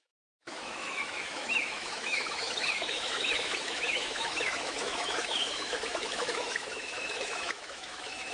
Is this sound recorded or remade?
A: remade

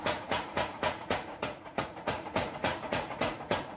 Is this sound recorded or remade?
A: remade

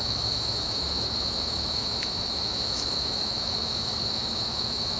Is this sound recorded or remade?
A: remade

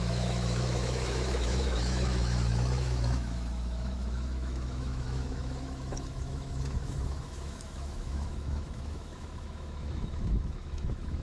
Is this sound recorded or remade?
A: remade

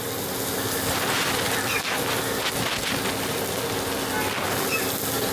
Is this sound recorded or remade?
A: recorded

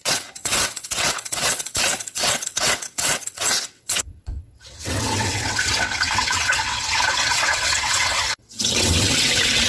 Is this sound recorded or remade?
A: remade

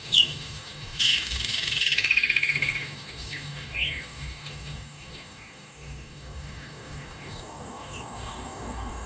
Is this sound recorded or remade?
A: remade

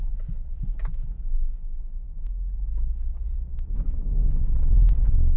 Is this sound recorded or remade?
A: recorded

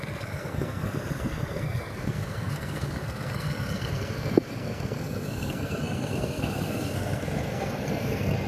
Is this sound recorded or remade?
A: remade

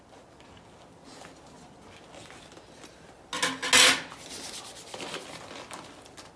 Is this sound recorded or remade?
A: recorded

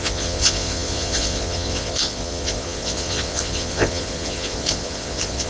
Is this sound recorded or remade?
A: remade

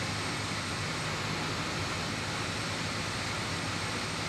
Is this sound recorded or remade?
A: recorded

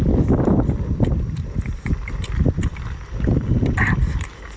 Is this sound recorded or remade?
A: remade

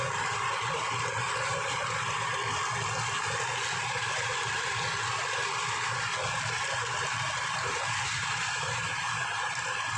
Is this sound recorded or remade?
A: remade